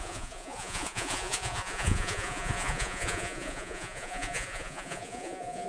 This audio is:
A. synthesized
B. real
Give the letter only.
A